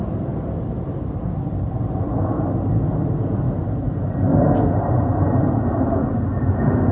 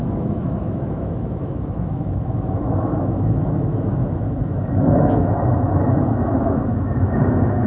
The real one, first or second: first